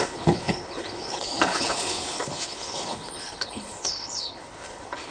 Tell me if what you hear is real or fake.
fake